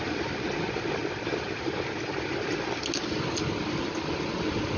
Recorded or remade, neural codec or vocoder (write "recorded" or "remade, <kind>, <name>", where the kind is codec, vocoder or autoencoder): recorded